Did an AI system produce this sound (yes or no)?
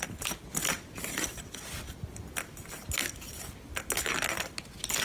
no